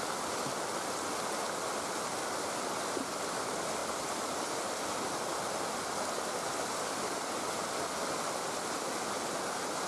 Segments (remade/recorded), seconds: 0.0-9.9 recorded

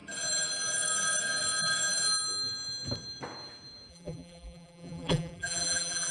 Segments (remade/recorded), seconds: 0.0-3.9 recorded; 3.9-6.1 remade